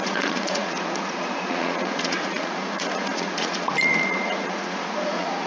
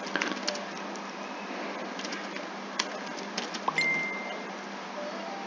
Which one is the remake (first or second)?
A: first